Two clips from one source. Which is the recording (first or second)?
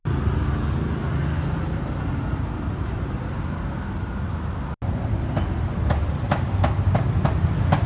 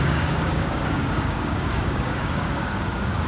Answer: first